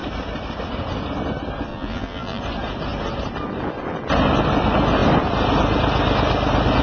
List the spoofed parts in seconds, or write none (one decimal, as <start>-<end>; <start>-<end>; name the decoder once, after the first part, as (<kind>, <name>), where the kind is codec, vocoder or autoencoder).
1.7-2.4 (vocoder, BigVGAN v2)